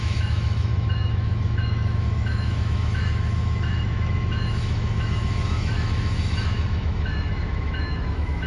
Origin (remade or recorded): remade